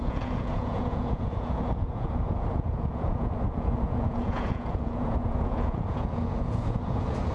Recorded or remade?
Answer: remade